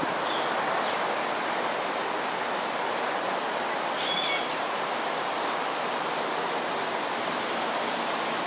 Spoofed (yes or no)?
no